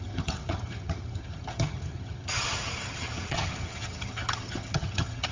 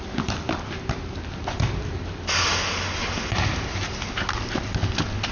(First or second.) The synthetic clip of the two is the first